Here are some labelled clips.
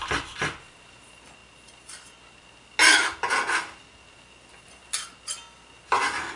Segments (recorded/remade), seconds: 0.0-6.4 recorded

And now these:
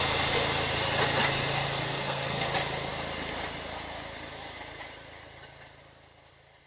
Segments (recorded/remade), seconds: 0.0-1.8 recorded; 1.8-2.5 remade; 2.5-6.7 recorded